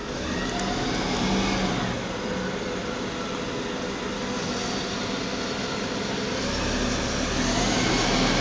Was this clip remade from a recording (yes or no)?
no